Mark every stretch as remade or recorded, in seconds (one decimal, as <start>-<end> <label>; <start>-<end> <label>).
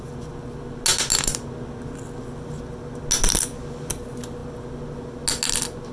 0.0-5.9 recorded